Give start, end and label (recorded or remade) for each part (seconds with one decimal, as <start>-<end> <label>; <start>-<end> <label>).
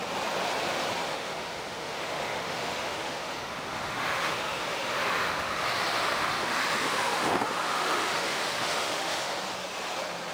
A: 0.0-1.1 recorded; 1.1-5.6 remade; 5.6-6.0 recorded; 6.0-9.4 remade; 9.4-10.3 recorded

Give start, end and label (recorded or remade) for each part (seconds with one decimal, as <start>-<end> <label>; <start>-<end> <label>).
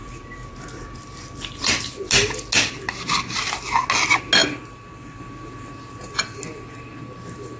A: 0.0-1.8 remade; 1.8-4.4 recorded; 4.4-5.2 remade; 5.2-7.6 recorded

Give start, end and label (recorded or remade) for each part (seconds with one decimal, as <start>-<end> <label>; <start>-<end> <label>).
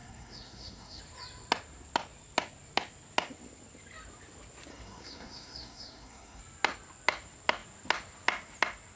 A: 0.0-1.0 remade; 1.0-4.7 recorded; 4.7-6.4 remade; 6.4-9.0 recorded